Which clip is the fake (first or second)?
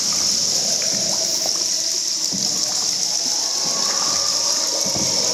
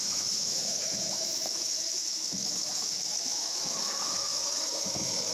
second